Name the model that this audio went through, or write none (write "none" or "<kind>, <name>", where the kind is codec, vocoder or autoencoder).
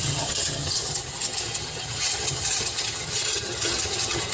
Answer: vocoder, HiFi-GAN